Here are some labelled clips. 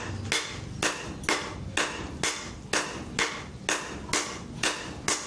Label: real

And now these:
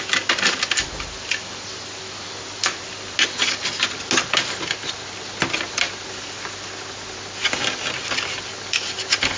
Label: real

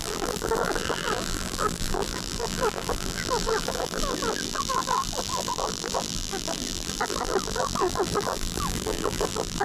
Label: fake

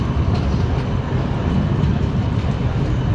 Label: fake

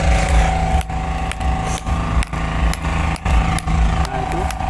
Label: real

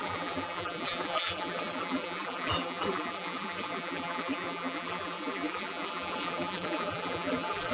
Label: fake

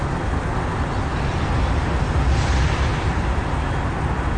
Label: real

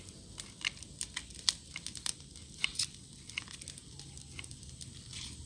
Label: real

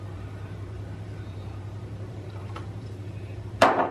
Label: fake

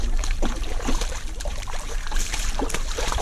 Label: fake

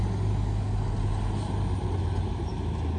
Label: real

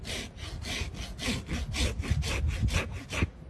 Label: real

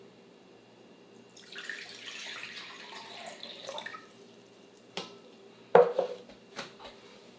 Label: fake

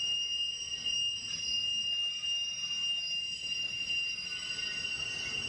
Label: real